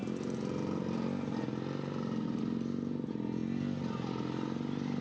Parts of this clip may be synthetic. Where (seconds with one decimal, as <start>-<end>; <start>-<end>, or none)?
none